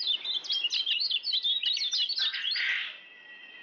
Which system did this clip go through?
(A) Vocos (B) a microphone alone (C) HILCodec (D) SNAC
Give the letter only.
B